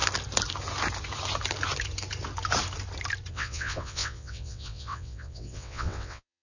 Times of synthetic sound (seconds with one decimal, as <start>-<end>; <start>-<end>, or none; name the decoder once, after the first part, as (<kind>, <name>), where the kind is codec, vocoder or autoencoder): 3.3-6.4 (vocoder, WaveNeXt)

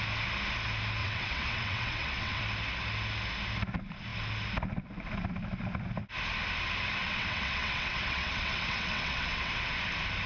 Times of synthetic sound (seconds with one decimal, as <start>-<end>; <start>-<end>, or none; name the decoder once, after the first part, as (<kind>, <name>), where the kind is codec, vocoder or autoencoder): 1.0-2.4 (vocoder, WaveNeXt); 7.0-9.5

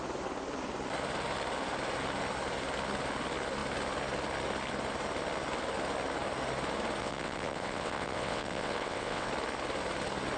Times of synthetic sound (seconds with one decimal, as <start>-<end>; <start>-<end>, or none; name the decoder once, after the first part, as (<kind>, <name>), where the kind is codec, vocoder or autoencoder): 7.0-9.3 (vocoder, WaveNeXt)